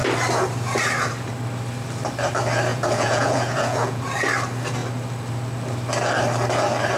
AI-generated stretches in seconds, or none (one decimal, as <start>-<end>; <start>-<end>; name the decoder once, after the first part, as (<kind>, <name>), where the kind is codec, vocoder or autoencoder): 2.7-4.0 (vocoder, Vocos)